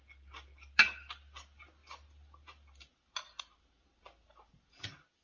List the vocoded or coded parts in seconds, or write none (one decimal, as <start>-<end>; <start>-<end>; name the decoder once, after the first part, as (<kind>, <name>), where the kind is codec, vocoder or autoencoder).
none